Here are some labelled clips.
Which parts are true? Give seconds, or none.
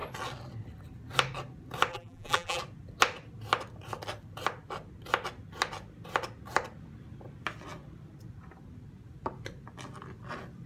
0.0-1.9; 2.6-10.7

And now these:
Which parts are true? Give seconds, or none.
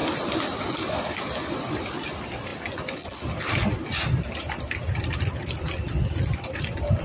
0.0-7.0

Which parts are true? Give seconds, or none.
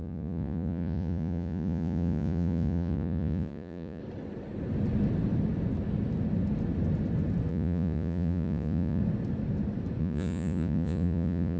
4.0-7.5; 9.0-10.0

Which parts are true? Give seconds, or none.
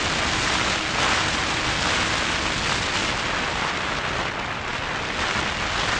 0.0-6.0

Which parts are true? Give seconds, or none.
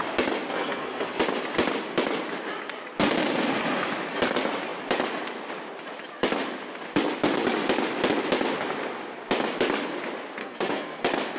0.0-0.5; 1.2-10.4; 11.0-11.4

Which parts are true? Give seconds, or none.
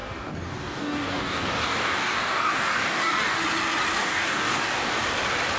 3.4-4.0; 5.0-5.6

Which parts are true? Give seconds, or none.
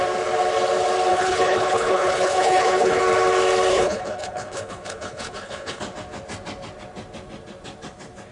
0.0-1.1; 3.0-3.7; 5.8-8.3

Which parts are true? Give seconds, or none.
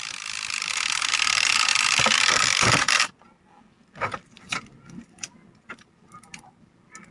0.0-7.1